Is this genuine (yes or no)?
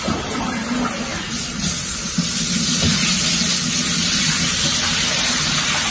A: yes